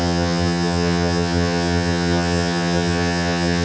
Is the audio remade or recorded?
remade